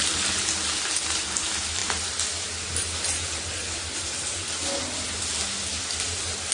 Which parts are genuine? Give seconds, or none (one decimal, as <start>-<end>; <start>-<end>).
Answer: 0.0-6.5